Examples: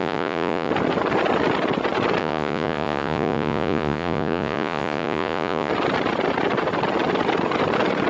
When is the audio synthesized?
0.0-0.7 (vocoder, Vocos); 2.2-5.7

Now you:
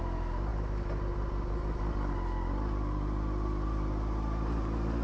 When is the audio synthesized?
none

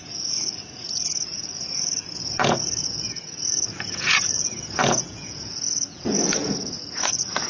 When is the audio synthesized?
0.0-7.5 (vocoder, Vocos)

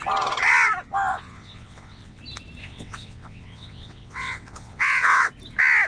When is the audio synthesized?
1.1-2.2 (vocoder, WaveNeXt); 2.6-5.3

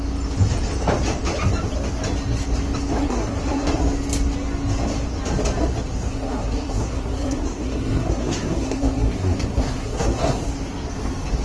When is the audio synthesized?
3.0-3.8 (codec, SNAC); 6.1-10.4

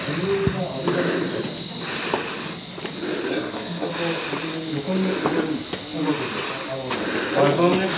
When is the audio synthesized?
3.3-3.9 (codec, SNAC)

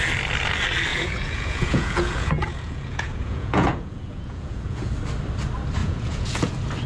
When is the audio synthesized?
0.9-4.9 (vocoder, Vocos); 5.8-6.5

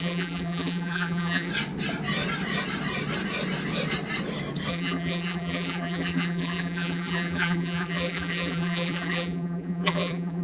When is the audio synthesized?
0.0-1.5 (vocoder, BigVGAN v2); 4.7-10.4